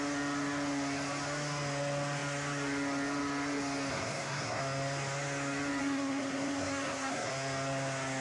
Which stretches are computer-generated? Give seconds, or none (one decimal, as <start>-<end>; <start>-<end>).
3.9-4.6; 5.8-7.3